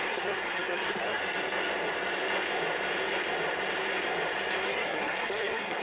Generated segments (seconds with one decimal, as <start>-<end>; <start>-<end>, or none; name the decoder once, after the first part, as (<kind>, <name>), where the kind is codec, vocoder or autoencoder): 0.0-1.2 (codec, SNAC); 4.7-5.8